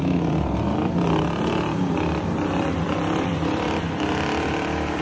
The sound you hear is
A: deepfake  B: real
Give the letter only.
A